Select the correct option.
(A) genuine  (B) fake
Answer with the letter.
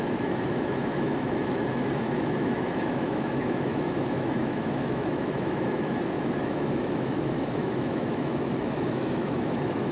B